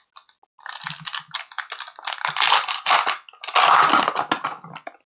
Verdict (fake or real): real